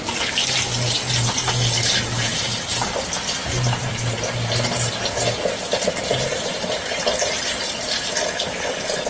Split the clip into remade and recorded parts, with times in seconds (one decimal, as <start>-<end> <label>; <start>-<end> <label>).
0.0-2.3 recorded; 2.3-3.0 remade; 3.0-3.4 recorded; 3.4-3.9 remade; 3.9-6.3 recorded; 6.3-8.2 remade; 8.2-9.1 recorded